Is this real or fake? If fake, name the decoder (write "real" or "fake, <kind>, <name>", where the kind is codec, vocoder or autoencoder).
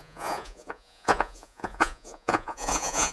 fake, vocoder, Vocos